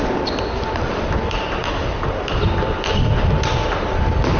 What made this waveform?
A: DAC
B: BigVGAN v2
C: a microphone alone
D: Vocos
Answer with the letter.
C